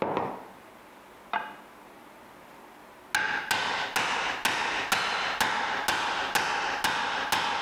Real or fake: real